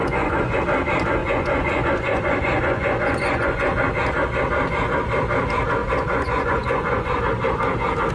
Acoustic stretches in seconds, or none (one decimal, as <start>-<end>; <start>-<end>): 0.6-1.2; 3.8-5.8; 7.2-8.1